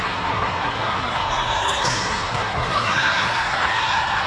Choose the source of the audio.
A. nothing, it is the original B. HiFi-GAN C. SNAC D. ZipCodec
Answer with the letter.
C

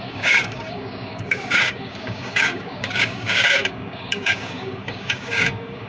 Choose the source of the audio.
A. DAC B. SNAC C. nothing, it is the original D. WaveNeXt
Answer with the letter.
A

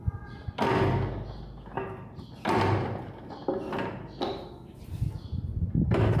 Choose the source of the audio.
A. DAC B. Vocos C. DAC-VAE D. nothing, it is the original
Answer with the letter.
D